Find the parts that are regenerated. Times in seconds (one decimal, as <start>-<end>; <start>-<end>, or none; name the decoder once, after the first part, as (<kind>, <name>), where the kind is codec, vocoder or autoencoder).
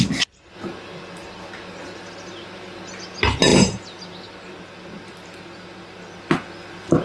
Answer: none